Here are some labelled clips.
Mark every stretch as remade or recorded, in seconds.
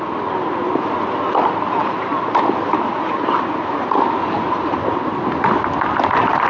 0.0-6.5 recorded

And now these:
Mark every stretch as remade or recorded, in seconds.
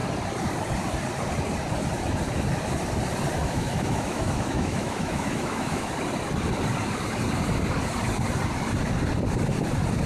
0.0-3.4 recorded; 3.4-5.9 remade; 5.9-10.1 recorded